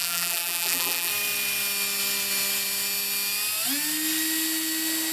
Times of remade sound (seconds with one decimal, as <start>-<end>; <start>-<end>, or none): 0.0-1.1